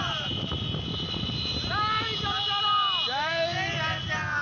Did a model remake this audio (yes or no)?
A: no